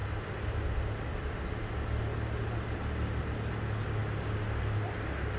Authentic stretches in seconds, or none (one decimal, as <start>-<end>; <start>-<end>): 0.0-5.4